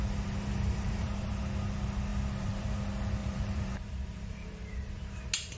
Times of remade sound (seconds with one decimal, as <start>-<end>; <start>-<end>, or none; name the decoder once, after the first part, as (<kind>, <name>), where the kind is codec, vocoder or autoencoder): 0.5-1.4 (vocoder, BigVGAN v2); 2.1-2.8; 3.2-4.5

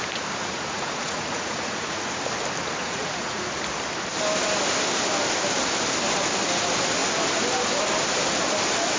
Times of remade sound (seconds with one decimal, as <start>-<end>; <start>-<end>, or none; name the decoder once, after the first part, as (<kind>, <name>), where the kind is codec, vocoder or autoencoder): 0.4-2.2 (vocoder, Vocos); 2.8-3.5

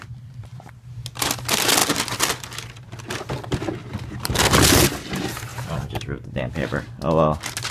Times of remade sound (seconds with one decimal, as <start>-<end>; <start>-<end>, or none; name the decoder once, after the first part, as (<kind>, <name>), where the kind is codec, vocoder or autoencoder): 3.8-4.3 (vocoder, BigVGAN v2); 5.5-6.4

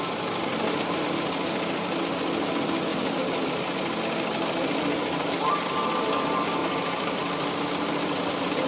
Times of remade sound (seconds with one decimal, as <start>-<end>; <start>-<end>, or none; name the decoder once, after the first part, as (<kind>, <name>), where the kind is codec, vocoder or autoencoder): 2.9-4.0 (vocoder, BigVGAN v2); 6.6-7.2

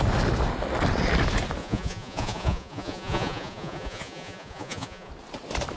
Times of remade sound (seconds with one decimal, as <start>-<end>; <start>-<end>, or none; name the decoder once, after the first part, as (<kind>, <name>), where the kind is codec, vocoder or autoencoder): 1.6-5.1 (vocoder, Vocos)